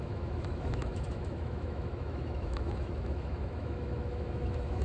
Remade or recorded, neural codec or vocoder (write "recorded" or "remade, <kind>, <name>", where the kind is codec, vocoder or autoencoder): remade, autoencoder, DAC-VAE